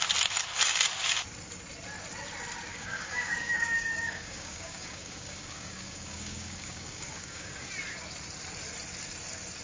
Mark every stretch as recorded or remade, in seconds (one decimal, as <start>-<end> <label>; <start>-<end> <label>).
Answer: 0.0-2.7 recorded; 2.7-7.7 remade; 7.7-9.6 recorded